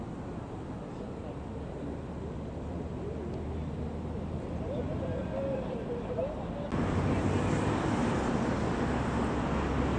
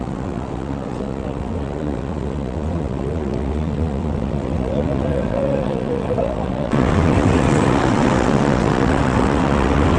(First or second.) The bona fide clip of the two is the first